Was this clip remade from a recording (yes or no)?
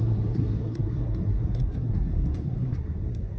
yes